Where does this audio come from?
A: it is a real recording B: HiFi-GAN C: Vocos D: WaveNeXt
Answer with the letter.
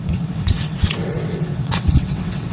D